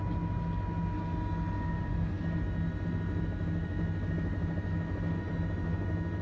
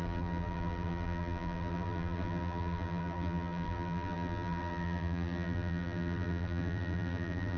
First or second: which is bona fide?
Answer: first